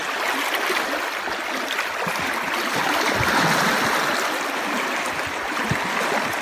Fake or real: real